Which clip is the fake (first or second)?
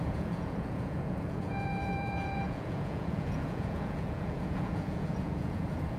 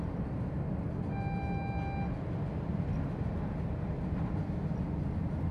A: first